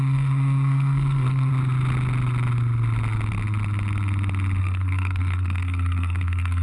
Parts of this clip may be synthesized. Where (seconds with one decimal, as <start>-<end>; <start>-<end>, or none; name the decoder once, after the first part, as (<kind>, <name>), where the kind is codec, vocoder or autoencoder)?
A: 0.0-1.5 (codec, SNAC); 4.6-6.6